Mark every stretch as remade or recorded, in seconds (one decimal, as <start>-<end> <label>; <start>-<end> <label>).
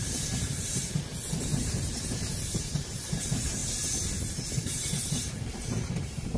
0.0-3.6 remade; 3.6-4.6 recorded; 4.6-6.4 remade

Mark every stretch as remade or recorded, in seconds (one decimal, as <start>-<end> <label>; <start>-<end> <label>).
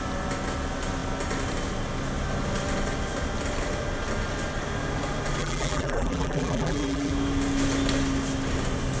0.0-5.4 recorded; 5.4-7.1 remade; 7.1-9.0 recorded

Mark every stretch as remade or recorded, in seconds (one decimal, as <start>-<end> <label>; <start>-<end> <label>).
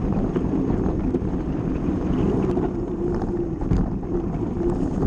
0.0-1.3 recorded; 1.3-5.1 remade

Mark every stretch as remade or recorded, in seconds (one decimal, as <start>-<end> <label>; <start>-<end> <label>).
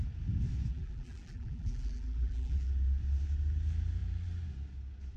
0.0-0.7 recorded; 0.7-2.7 remade; 2.7-5.2 recorded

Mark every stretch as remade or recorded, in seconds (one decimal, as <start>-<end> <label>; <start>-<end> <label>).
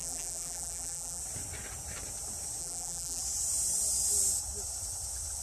0.0-1.2 remade; 1.2-2.6 recorded; 2.6-3.2 remade; 3.2-5.4 recorded